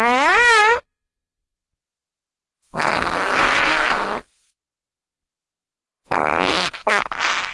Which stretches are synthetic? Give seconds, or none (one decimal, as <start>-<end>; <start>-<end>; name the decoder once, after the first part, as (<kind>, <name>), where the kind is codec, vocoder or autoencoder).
0.0-7.5 (codec, SNAC)